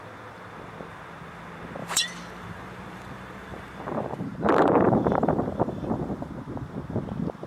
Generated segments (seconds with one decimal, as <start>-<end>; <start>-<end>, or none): 1.8-6.3